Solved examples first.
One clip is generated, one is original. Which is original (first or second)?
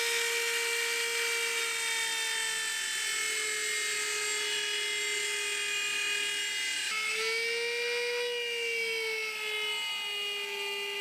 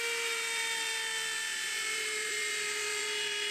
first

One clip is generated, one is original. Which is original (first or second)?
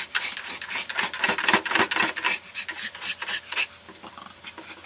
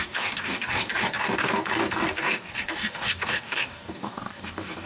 first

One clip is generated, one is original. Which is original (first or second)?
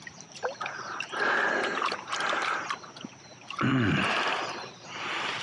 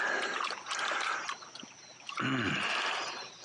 second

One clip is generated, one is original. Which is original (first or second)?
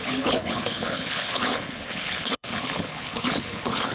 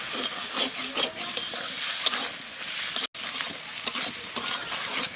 second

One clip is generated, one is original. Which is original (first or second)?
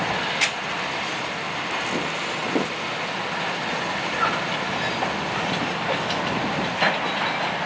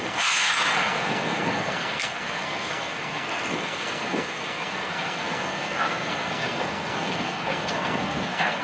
first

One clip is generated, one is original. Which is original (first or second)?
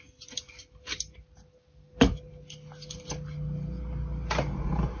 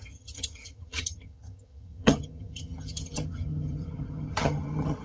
first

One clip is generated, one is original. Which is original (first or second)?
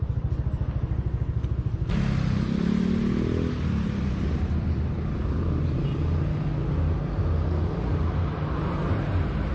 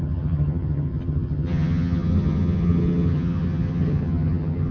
first